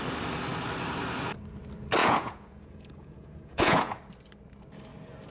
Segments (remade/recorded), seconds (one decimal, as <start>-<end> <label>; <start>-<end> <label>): 0.0-2.0 recorded; 2.0-4.0 remade; 4.0-5.3 recorded

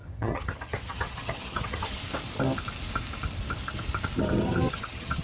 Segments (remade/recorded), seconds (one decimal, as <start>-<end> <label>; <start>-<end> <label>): 0.0-2.0 remade; 2.0-4.2 recorded; 4.2-5.2 remade